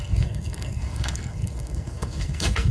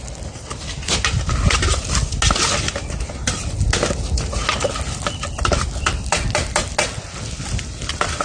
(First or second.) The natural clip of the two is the second